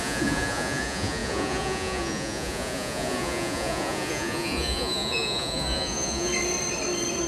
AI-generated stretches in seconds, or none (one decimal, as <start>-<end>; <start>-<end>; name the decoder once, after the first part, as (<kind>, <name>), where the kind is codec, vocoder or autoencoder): 0.0-6.3 (vocoder, Vocos)